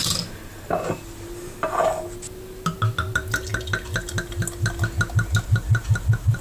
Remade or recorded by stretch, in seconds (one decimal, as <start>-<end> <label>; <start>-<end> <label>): 0.0-6.4 recorded